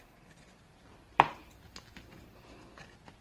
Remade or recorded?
remade